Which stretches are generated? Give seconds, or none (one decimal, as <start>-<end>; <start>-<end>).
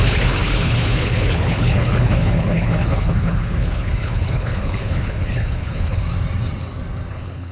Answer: 0.0-6.0; 7.1-7.5